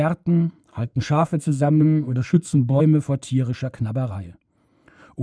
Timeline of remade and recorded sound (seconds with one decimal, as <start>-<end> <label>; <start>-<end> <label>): 0.0-0.7 recorded; 0.7-2.8 remade; 2.8-5.2 recorded